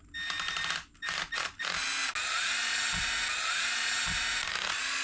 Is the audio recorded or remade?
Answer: recorded